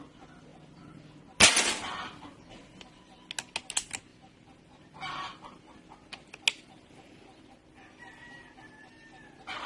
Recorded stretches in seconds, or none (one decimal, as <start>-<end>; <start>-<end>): 0.0-9.7